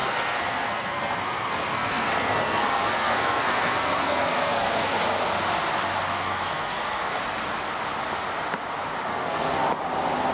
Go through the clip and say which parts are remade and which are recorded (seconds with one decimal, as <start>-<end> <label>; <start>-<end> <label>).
0.0-5.0 remade; 5.0-6.1 recorded; 6.1-7.2 remade; 7.2-9.1 recorded; 9.1-9.6 remade; 9.6-10.3 recorded